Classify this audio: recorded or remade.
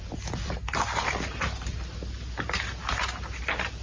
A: recorded